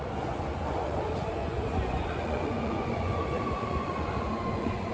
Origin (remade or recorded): remade